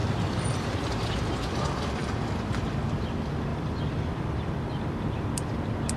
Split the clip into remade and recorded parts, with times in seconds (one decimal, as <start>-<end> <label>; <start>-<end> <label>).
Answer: 0.0-1.9 remade; 1.9-3.5 recorded; 3.5-4.9 remade; 4.9-6.0 recorded